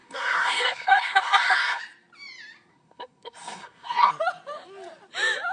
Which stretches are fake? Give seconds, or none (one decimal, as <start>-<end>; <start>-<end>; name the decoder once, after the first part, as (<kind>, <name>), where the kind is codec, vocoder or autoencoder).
0.0-1.8 (codec, SNAC); 2.7-4.1